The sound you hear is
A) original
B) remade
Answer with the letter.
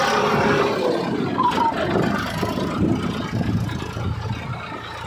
A